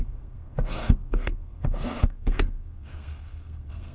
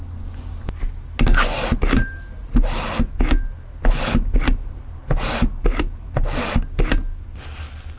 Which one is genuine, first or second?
second